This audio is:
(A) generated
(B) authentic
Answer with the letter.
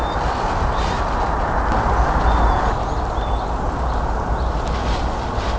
B